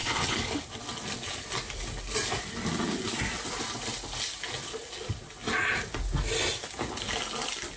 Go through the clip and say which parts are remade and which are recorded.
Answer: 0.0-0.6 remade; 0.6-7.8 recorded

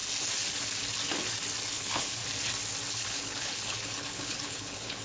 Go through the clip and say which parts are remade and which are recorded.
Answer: 0.0-1.7 recorded; 1.7-2.2 remade; 2.2-2.9 recorded; 2.9-5.0 remade

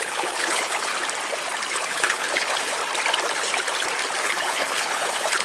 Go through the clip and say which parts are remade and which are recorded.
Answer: 0.0-0.9 remade; 0.9-1.7 recorded; 1.7-2.8 remade; 2.8-4.2 recorded; 4.2-5.4 remade

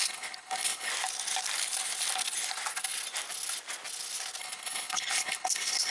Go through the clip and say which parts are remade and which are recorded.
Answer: 0.0-0.9 remade; 0.9-4.4 recorded; 4.4-5.9 remade

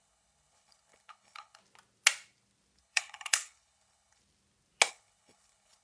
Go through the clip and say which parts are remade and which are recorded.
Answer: 0.0-1.6 remade; 1.6-2.8 recorded; 2.8-4.2 remade; 4.2-4.9 recorded; 4.9-5.8 remade

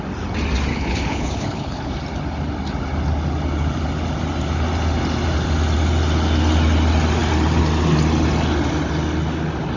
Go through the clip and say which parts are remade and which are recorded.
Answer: 0.0-0.7 recorded; 0.7-1.9 remade; 1.9-9.8 recorded

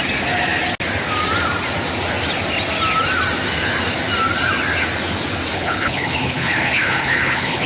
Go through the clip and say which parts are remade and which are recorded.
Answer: 0.0-5.5 recorded; 5.5-7.7 remade

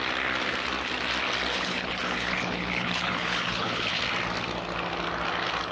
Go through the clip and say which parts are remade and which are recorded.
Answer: 0.0-1.5 recorded; 1.5-4.0 remade; 4.0-5.7 recorded